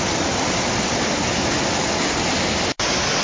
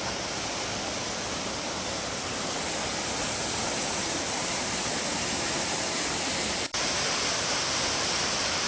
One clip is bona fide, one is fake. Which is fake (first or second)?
second